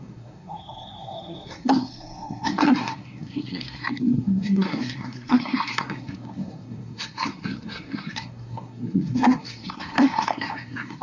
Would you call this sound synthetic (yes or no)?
yes